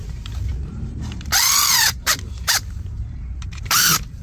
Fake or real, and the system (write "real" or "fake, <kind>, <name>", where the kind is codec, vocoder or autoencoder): fake, vocoder, BigVGAN v2